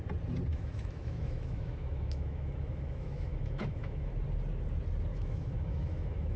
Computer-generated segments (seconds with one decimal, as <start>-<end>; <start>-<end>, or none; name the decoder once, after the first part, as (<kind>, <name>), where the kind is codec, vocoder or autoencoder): 0.5-4.1 (autoencoder, DAC-VAE); 5.1-6.4